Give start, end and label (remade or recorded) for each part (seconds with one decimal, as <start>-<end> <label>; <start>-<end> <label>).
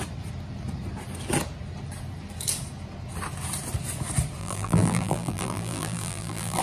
0.0-4.4 recorded; 4.4-6.6 remade